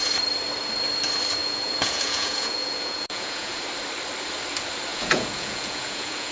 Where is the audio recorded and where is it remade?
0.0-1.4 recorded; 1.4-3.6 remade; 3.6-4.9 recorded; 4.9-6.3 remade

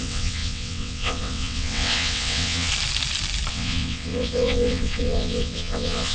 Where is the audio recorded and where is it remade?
0.0-2.7 remade; 2.7-3.5 recorded; 3.5-6.1 remade

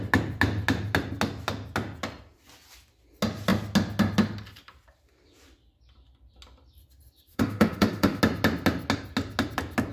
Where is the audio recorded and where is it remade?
0.0-7.3 recorded; 7.3-8.2 remade; 8.2-9.9 recorded

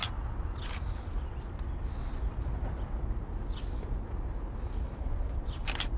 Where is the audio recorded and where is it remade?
0.0-6.0 recorded

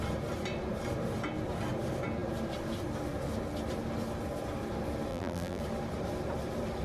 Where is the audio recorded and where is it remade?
0.0-5.1 recorded; 5.1-5.6 remade; 5.6-6.8 recorded